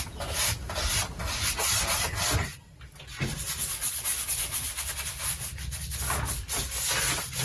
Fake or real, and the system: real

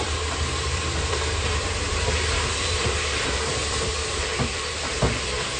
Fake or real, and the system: fake, vocoder, BigVGAN v2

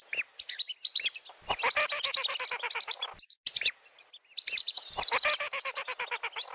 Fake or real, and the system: real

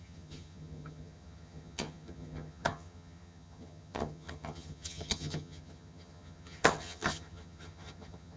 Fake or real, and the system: fake, vocoder, HiFi-GAN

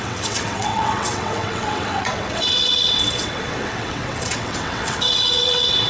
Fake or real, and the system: fake, vocoder, WaveNeXt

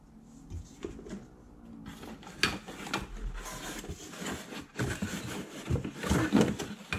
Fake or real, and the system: real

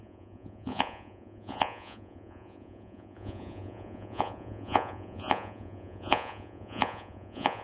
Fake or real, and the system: fake, vocoder, Vocos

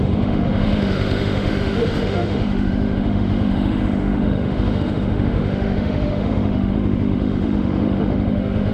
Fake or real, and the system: fake, autoencoder, DAC-VAE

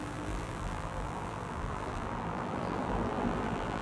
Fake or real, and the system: fake, vocoder, BigVGAN v2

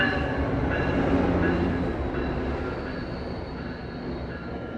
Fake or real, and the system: real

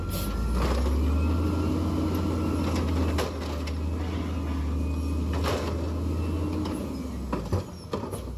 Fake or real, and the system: real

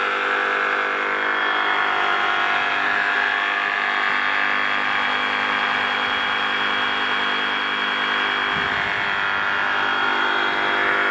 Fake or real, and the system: real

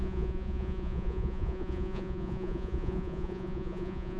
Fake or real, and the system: fake, vocoder, Vocos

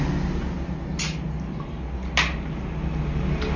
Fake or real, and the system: real